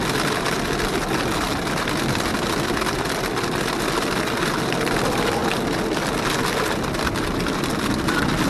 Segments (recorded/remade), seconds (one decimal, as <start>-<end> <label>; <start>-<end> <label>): 0.0-8.5 recorded